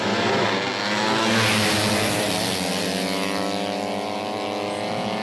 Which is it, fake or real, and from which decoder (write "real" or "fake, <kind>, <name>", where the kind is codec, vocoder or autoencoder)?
real